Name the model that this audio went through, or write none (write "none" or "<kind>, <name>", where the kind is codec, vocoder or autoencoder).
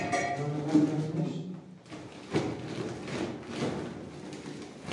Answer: none